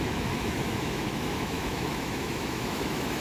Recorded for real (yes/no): no